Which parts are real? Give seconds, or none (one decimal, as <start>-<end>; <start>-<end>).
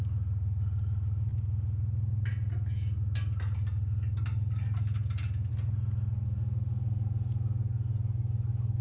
0.0-8.8